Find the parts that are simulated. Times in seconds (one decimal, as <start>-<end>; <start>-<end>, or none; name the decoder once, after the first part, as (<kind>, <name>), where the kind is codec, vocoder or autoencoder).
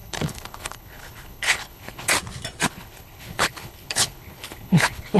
0.0-2.1 (codec, HILCodec); 2.7-5.2